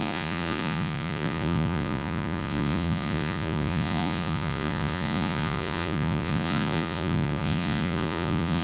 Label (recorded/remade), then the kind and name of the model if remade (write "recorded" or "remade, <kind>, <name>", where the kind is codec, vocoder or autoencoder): remade, vocoder, Vocos